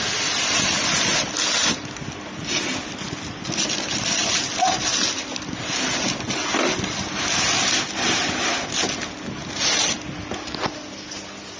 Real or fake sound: real